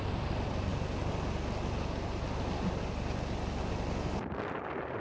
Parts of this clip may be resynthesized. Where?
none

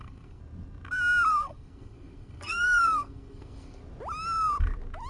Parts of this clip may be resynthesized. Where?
0.0-0.4; 1.3-3.8